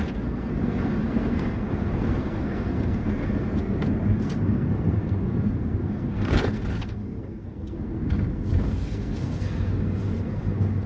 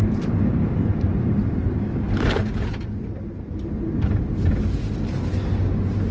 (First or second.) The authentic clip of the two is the second